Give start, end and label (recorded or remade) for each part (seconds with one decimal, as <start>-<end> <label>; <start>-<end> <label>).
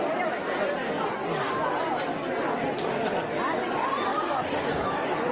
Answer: 0.0-4.1 recorded; 4.1-5.3 remade